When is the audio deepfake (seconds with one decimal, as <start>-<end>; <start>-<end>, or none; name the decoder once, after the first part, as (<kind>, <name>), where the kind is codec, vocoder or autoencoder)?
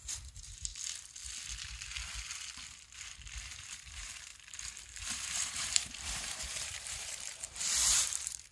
0.0-0.7 (vocoder, BigVGAN v2); 3.6-4.3; 5.0-8.5